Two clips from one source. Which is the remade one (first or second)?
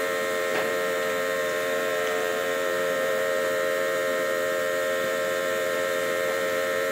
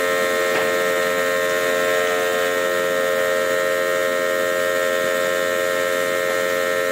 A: first